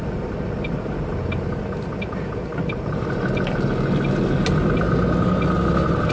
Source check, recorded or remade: recorded